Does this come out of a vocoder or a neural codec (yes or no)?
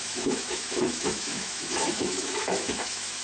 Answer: yes